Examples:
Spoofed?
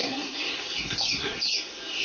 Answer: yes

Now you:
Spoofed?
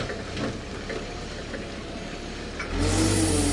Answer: no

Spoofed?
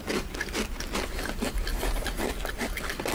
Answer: no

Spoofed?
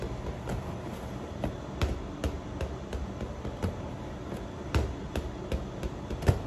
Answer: no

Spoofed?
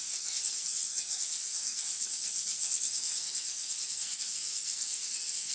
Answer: yes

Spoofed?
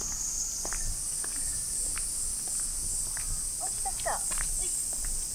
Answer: no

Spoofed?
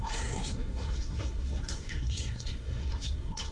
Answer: yes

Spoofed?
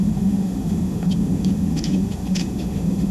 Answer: yes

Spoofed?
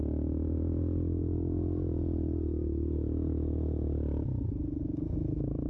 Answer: no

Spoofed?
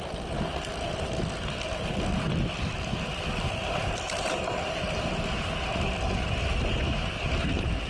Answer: no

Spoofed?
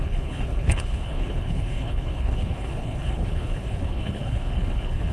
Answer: yes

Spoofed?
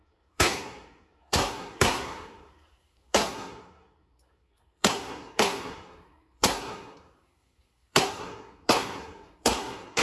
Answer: yes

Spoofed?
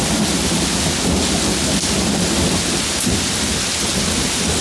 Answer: no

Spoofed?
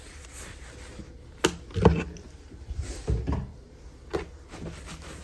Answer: no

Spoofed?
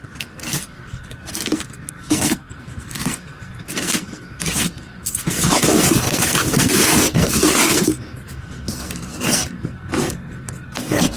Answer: yes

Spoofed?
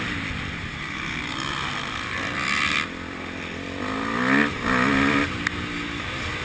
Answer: no